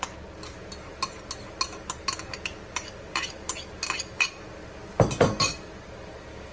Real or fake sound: real